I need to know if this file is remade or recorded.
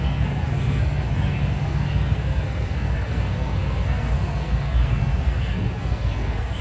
remade